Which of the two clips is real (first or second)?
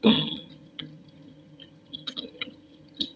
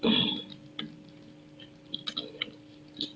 second